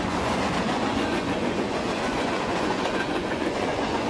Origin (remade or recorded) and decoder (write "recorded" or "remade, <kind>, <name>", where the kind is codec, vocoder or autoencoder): remade, vocoder, Vocos